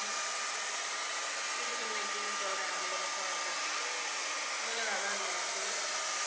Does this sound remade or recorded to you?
recorded